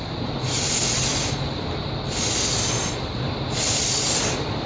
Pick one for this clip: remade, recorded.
recorded